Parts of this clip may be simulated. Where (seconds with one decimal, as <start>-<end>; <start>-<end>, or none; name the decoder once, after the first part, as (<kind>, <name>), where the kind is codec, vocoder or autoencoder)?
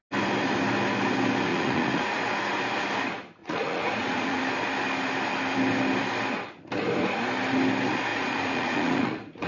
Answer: 1.5-2.2 (vocoder, Vocos); 3.4-4.4; 8.1-9.5